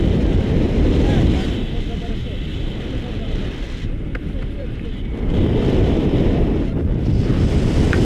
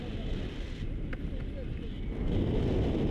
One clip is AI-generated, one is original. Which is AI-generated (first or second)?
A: first